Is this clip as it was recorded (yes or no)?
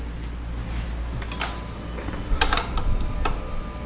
yes